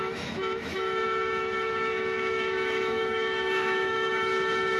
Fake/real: fake